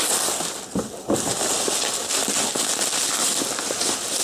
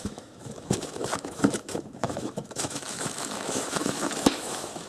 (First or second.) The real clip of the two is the first